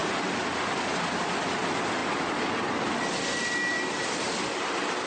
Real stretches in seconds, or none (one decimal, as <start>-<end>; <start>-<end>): 0.0-5.1